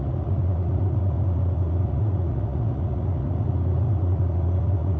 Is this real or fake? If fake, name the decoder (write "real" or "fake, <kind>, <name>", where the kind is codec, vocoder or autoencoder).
fake, vocoder, Vocos